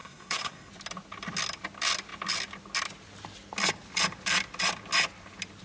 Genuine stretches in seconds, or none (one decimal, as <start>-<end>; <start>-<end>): 0.7-5.6